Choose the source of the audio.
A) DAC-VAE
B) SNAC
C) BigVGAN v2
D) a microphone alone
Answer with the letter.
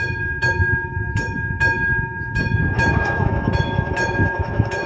A